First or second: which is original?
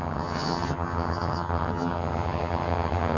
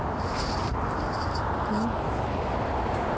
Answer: second